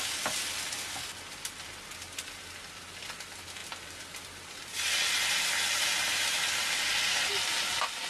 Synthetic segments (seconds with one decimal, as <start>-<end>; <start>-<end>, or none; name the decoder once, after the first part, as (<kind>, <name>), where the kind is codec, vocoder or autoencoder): none